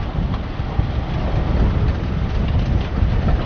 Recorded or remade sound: recorded